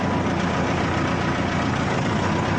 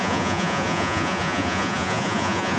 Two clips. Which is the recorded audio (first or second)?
first